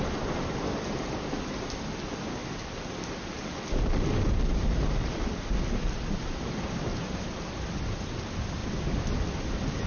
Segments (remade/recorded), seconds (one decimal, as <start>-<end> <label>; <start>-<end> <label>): 0.0-2.4 recorded; 2.4-7.4 remade; 7.4-8.6 recorded; 8.6-9.9 remade